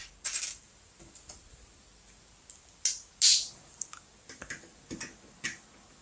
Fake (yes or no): no